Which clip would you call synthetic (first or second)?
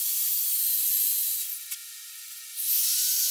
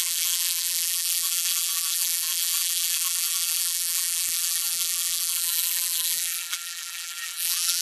second